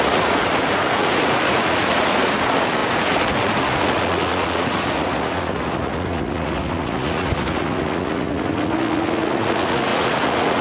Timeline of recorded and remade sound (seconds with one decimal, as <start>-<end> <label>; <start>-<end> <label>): 0.0-10.6 remade